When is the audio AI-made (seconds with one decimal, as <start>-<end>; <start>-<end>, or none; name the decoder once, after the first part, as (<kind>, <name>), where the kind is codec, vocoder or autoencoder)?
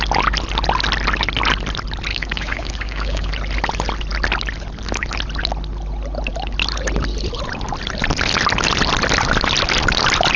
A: 2.1-3.3 (codec, DAC)